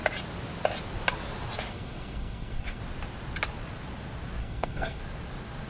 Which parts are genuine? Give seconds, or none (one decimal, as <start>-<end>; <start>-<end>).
0.0-1.7; 2.8-4.4; 5.0-5.7